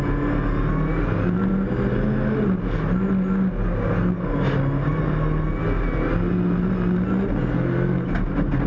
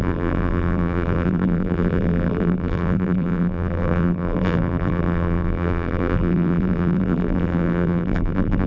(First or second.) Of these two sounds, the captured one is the first